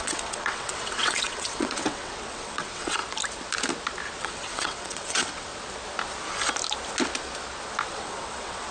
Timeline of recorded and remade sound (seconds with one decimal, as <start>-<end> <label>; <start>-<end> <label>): 0.0-3.0 remade; 3.0-4.2 recorded; 4.2-5.5 remade; 5.5-7.9 recorded; 7.9-8.7 remade